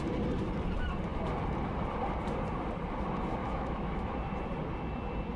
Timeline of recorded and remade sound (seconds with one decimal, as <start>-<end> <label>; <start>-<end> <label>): 0.0-3.4 recorded; 3.4-4.1 remade; 4.1-5.4 recorded